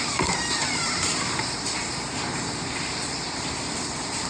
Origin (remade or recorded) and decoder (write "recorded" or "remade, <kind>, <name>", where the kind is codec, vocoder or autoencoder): recorded